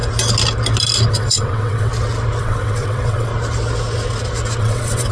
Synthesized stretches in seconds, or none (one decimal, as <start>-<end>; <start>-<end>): 1.1-1.9; 2.4-3.3; 4.6-5.1